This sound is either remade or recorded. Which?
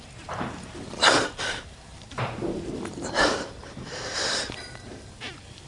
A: remade